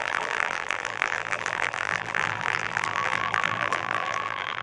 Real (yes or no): no